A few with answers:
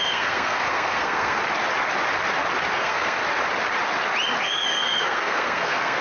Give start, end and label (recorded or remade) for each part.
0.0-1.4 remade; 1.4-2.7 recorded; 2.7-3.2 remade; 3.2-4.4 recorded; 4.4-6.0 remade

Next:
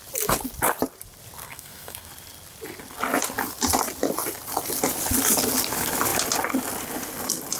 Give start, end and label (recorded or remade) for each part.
0.0-1.4 recorded; 1.4-2.1 remade; 2.1-7.6 recorded

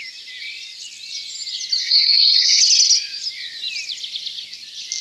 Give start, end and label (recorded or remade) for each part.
0.0-1.8 recorded; 1.8-2.6 remade; 2.6-5.0 recorded